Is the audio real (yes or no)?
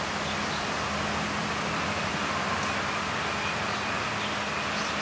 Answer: yes